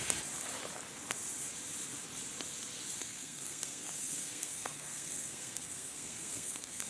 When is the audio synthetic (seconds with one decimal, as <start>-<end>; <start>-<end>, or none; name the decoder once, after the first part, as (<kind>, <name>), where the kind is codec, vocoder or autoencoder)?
3.0-6.9 (codec, SNAC)

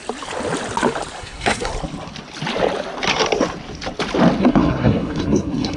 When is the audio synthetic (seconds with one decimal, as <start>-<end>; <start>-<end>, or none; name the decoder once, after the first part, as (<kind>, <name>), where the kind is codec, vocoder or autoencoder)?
1.2-1.7 (codec, SNAC); 4.4-5.8